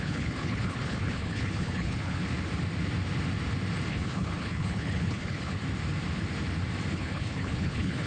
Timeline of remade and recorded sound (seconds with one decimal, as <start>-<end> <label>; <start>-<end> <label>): 0.0-2.2 remade; 2.2-3.9 recorded; 3.9-5.6 remade; 5.6-6.9 recorded; 6.9-8.1 remade